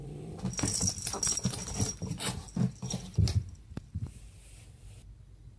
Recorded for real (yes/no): yes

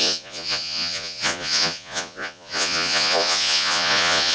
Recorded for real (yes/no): no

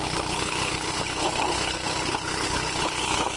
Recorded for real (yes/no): no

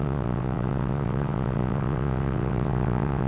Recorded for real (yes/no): no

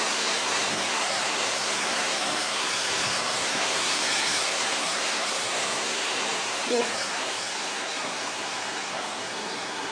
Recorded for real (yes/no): no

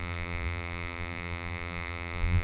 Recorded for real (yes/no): no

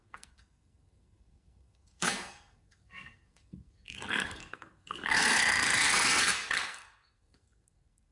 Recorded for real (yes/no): no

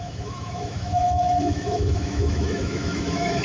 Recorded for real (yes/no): no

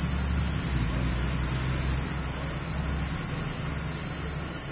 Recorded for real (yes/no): yes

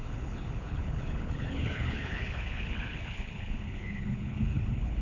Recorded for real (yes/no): no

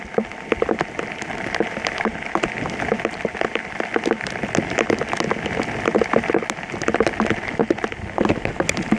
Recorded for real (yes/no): yes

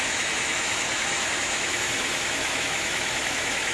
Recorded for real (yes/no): no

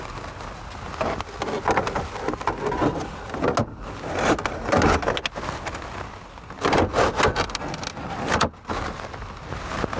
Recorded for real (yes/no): yes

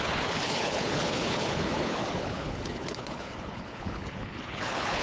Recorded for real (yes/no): no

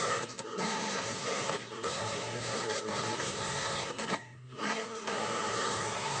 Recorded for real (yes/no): no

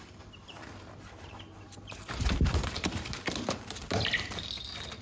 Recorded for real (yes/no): no